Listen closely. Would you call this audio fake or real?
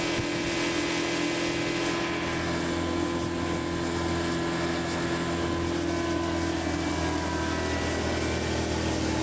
real